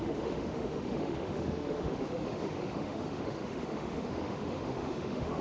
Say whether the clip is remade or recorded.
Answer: remade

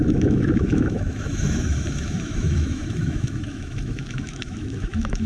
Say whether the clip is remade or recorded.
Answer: remade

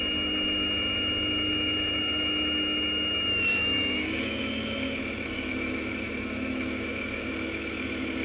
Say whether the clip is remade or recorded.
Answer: remade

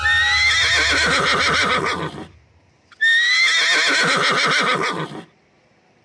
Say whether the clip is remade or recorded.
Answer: recorded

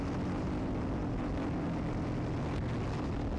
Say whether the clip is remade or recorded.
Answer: recorded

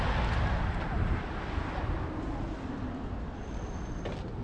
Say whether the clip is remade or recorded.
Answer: recorded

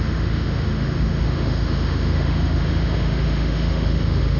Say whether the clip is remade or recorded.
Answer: remade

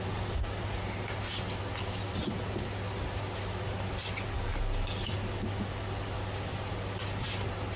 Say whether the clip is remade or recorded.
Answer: recorded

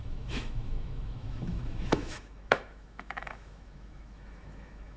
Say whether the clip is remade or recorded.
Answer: remade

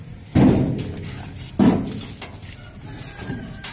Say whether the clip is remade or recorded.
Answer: recorded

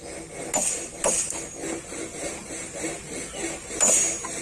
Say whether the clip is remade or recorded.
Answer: recorded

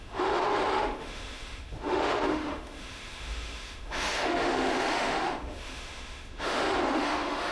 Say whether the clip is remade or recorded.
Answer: remade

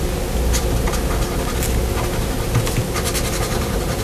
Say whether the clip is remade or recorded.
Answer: recorded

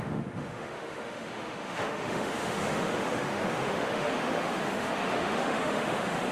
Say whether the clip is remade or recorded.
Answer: remade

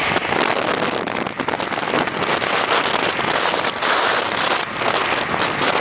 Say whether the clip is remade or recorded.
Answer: recorded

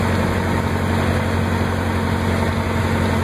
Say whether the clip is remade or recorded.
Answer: recorded